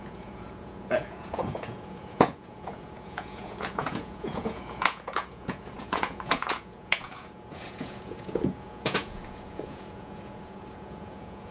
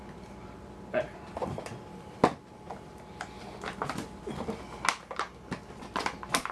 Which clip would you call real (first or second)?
second